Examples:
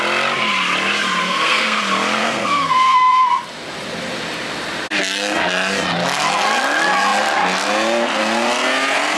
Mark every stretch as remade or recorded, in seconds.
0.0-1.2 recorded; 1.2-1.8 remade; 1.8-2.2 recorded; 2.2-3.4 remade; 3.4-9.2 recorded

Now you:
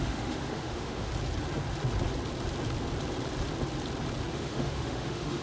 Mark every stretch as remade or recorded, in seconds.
0.0-1.1 remade; 1.1-4.3 recorded; 4.3-5.4 remade

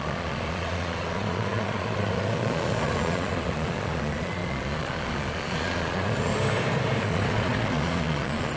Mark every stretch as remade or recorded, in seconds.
0.0-6.3 remade; 6.3-7.0 recorded; 7.0-8.6 remade

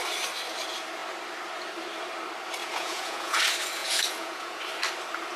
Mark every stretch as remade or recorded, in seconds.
0.0-2.6 recorded; 2.6-3.4 remade; 3.4-3.8 recorded; 3.8-4.6 remade; 4.6-5.4 recorded

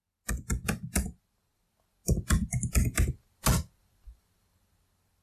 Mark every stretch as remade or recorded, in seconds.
0.0-5.2 recorded

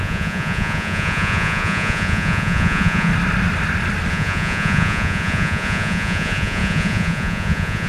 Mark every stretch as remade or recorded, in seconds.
0.0-3.1 remade; 3.1-4.1 recorded; 4.1-7.9 remade

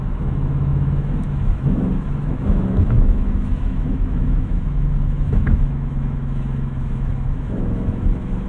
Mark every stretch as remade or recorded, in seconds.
0.0-8.5 remade

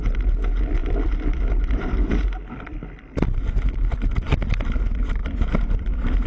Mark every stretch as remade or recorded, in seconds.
0.0-0.8 recorded; 0.8-2.2 remade; 2.2-2.7 recorded; 2.7-4.1 remade; 4.1-5.2 recorded; 5.2-6.3 remade